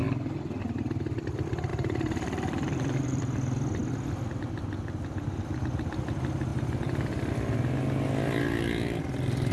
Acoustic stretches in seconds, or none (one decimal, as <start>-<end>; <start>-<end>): 0.0-1.7; 3.2-6.5; 7.3-9.5